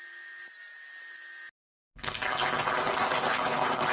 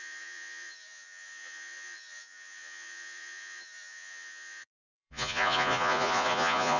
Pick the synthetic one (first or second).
second